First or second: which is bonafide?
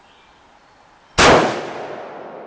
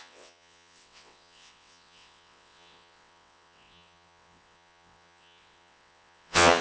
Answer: first